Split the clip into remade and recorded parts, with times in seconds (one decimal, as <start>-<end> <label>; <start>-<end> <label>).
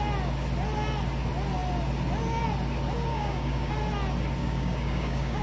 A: 0.0-3.1 recorded; 3.1-3.7 remade; 3.7-4.4 recorded; 4.4-5.4 remade